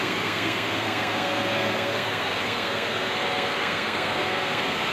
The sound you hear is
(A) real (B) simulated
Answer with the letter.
B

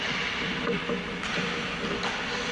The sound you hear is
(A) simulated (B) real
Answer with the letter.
B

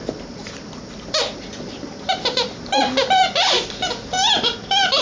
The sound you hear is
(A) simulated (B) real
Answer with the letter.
A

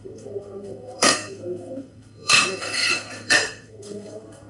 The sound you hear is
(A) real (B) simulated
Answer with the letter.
B